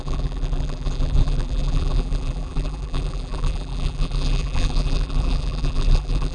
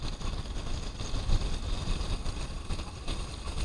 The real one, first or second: second